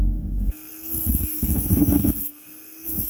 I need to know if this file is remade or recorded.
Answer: remade